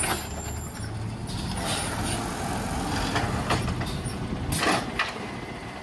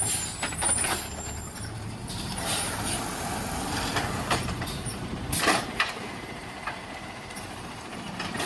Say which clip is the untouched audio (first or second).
first